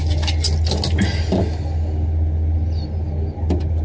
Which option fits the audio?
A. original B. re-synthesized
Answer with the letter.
A